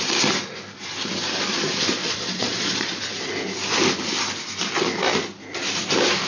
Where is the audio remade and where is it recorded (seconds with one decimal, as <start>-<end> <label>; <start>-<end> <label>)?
0.0-2.0 recorded; 2.0-3.0 remade; 3.0-6.3 recorded